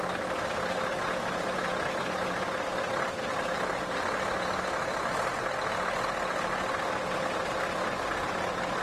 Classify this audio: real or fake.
real